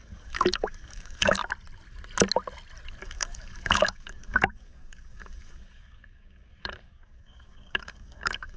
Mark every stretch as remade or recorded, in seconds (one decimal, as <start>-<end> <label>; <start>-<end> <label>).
0.0-1.4 remade; 1.4-3.0 recorded; 3.0-8.6 remade